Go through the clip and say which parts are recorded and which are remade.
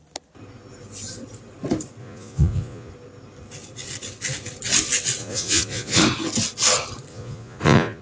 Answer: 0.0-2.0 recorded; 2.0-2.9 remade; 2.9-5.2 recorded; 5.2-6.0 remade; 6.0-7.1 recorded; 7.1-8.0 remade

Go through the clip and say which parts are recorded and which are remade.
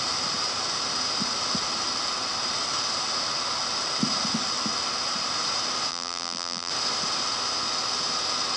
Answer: 0.0-5.9 recorded; 5.9-6.7 remade; 6.7-8.6 recorded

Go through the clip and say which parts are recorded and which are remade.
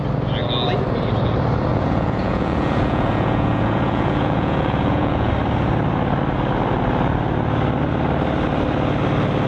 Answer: 0.0-1.7 recorded; 1.7-5.3 remade; 5.3-9.5 recorded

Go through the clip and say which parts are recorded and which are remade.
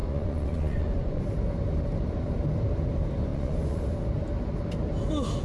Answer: 0.0-1.2 remade; 1.2-3.3 recorded; 3.3-3.8 remade; 3.8-5.4 recorded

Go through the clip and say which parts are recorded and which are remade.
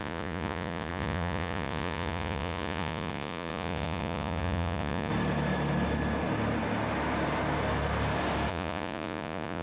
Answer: 0.0-5.1 remade; 5.1-8.5 recorded; 8.5-9.6 remade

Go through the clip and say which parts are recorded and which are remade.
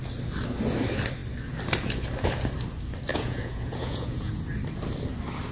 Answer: 0.0-3.1 recorded; 3.1-4.4 remade; 4.4-5.5 recorded